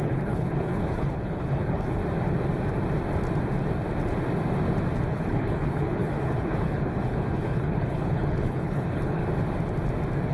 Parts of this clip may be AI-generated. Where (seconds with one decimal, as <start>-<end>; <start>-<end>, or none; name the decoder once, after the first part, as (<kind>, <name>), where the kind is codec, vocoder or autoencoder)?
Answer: 0.0-2.0 (codec, HILCodec); 5.1-9.2